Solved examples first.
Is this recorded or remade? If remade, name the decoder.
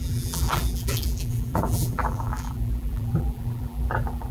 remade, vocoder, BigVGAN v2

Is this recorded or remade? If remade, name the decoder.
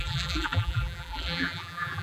remade, vocoder, BigVGAN v2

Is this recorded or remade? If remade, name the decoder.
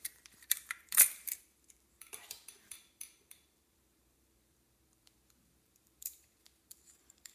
remade, vocoder, BigVGAN v2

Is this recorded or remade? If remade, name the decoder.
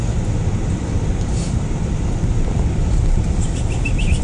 recorded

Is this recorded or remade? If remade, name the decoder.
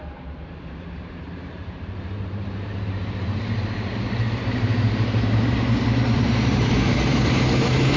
remade, vocoder, BigVGAN v2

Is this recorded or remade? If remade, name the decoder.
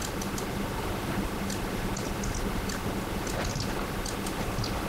recorded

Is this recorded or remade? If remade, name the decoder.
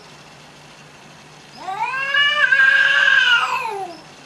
remade, vocoder, BigVGAN v2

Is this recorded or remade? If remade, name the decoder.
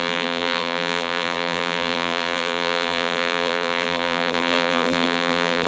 remade, vocoder, BigVGAN v2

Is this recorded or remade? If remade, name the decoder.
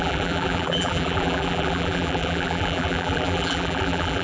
remade, vocoder, BigVGAN v2